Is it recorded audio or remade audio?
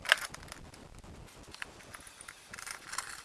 recorded